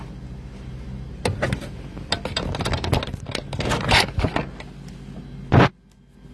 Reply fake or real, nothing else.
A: real